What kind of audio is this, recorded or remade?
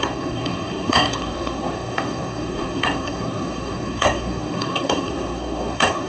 remade